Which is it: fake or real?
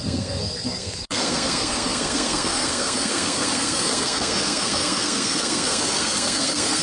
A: fake